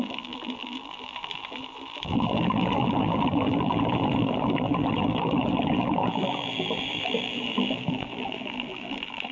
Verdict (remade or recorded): remade